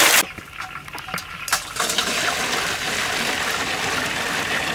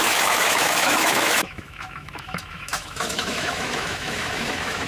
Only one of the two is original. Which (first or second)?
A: first